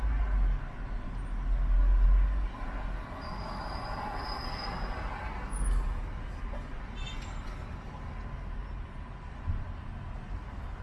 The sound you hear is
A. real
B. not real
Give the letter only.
A